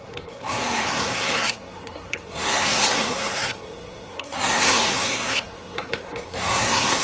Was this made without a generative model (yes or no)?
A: no